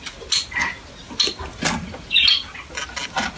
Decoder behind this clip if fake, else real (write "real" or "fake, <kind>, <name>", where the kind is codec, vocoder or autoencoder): real